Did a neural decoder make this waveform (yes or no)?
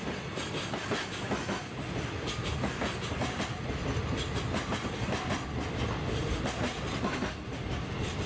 no